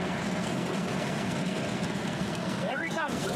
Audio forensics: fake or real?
fake